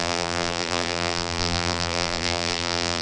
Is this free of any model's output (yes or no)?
no